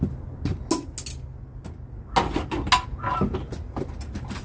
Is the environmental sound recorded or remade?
recorded